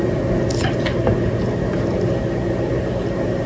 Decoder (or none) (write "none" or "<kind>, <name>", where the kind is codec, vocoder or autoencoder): none